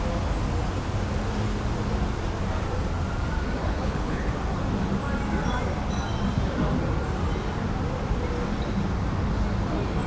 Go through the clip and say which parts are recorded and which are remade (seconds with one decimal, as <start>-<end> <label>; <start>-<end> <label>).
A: 0.0-3.6 recorded; 3.6-4.3 remade; 4.3-10.1 recorded